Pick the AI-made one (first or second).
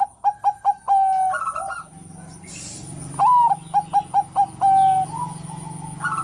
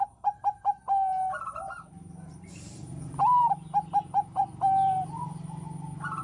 second